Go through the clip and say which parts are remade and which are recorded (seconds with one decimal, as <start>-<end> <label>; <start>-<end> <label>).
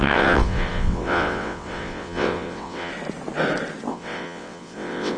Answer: 0.0-2.9 remade; 2.9-3.9 recorded; 3.9-5.2 remade